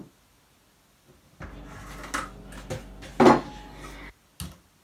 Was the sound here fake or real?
real